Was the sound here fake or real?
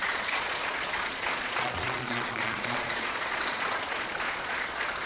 fake